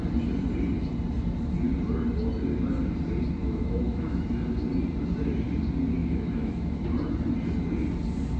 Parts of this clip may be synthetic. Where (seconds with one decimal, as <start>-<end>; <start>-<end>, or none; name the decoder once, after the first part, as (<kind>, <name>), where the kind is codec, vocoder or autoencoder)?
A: 3.4-4.2 (autoencoder, DAC-VAE); 6.0-6.8